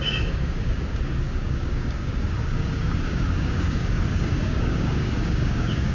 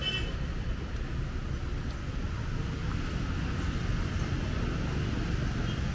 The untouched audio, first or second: second